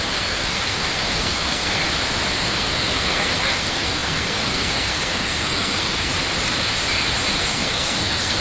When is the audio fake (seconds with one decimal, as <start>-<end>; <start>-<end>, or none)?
0.0-1.8; 2.4-6.1; 7.4-8.4